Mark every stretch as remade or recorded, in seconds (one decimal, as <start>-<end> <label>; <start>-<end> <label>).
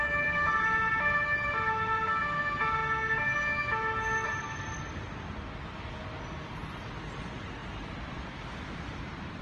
0.0-2.8 remade; 2.8-6.2 recorded; 6.2-9.4 remade